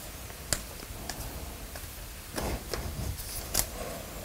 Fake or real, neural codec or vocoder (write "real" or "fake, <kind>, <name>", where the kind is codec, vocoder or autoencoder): real